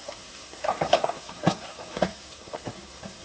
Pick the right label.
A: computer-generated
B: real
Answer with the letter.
A